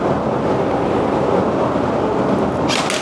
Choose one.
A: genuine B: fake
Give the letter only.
A